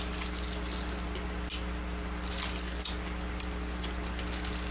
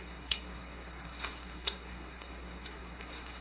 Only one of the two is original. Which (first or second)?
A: first